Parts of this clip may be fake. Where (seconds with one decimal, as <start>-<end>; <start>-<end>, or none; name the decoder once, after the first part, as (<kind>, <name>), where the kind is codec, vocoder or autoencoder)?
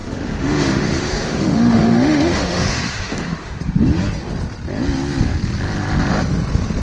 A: 0.0-3.6 (autoencoder, DAC-VAE)